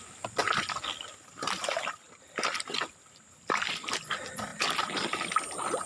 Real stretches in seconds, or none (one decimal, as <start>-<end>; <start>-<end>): 0.4-3.9

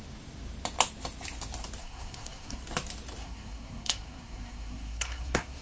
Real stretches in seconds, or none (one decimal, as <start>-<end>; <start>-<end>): 0.0-1.8; 2.6-3.2

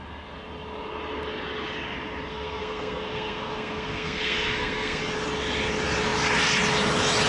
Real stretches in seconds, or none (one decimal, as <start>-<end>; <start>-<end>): 0.0-2.3; 5.0-7.3